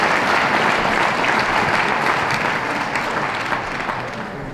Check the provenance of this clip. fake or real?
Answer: fake